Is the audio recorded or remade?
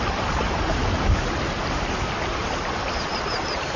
recorded